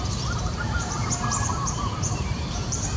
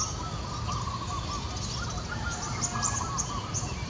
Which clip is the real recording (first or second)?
second